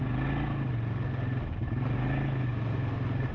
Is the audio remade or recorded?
recorded